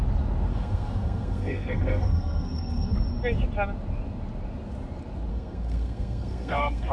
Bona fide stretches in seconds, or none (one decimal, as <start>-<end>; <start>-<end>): 0.0-0.5; 2.9-5.3